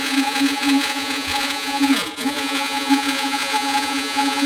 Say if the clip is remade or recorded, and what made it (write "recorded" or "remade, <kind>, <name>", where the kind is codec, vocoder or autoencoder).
remade, vocoder, Vocos